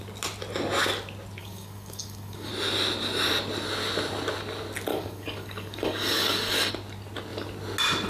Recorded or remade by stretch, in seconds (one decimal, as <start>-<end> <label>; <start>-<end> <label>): 0.0-1.4 recorded; 1.4-2.5 remade; 2.5-4.9 recorded; 4.9-6.7 remade; 6.7-8.1 recorded